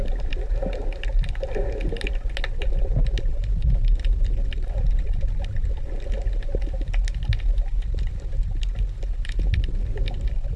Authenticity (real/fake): real